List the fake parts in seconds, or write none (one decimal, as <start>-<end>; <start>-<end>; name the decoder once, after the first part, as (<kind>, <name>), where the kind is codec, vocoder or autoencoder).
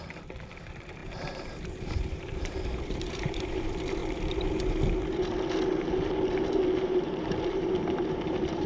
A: 0.0-4.0 (vocoder, BigVGAN v2); 6.8-8.7